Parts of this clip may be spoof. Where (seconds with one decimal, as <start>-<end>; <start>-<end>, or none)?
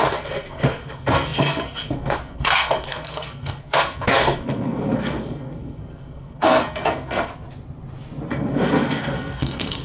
0.0-7.3; 8.3-9.8